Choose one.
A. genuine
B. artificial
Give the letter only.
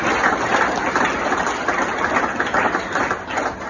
A